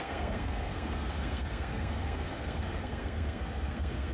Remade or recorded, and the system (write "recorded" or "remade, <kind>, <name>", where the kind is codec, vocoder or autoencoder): remade, codec, SNAC